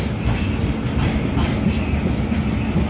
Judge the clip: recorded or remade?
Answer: recorded